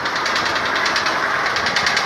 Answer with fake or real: real